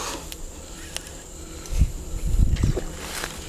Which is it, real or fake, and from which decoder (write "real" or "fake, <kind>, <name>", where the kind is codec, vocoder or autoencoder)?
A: real